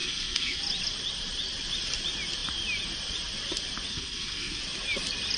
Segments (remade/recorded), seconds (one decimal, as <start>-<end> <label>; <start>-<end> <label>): 0.0-0.6 remade; 0.6-3.9 recorded; 3.9-4.6 remade; 4.6-5.4 recorded